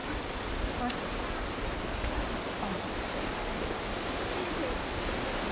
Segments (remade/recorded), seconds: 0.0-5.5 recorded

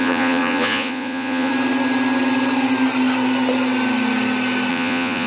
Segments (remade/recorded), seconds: 0.0-1.5 remade; 1.5-4.7 recorded; 4.7-5.3 remade

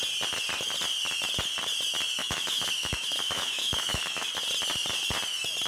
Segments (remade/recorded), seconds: 0.0-2.2 recorded; 2.2-4.3 remade; 4.3-5.7 recorded

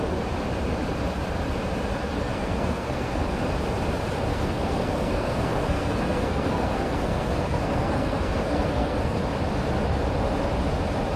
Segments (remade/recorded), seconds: 0.0-2.2 recorded; 2.2-3.4 remade; 3.4-4.3 recorded; 4.3-9.2 remade; 9.2-11.2 recorded

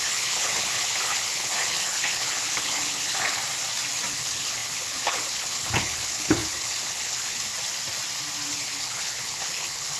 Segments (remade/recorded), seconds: 0.0-3.4 remade; 3.4-4.1 recorded; 4.1-7.5 remade; 7.5-8.5 recorded; 8.5-10.0 remade

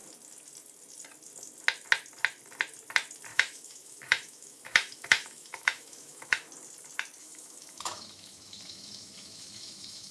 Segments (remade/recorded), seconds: 0.0-3.3 recorded; 3.3-6.5 remade; 6.5-7.2 recorded; 7.2-10.1 remade

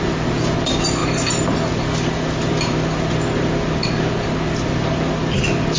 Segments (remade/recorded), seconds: 0.0-5.8 recorded

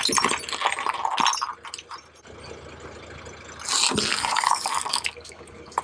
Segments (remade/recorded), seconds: 0.0-4.1 recorded; 4.1-5.8 remade